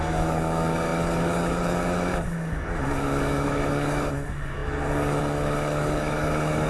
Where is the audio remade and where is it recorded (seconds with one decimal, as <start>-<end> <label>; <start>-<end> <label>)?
0.0-6.7 remade